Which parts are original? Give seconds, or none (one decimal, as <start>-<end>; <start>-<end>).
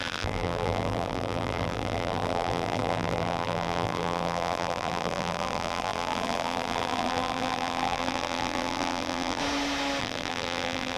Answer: 9.4-10.0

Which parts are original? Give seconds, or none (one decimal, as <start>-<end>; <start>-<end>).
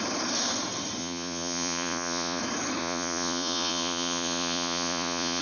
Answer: 0.0-1.0; 2.4-2.8